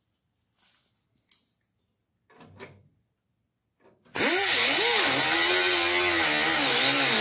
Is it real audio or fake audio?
real